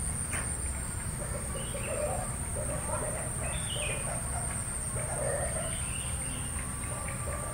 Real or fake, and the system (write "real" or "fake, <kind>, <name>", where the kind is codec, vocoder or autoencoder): real